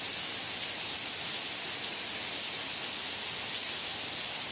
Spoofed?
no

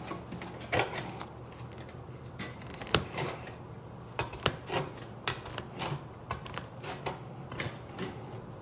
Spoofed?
no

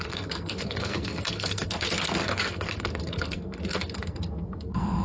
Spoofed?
yes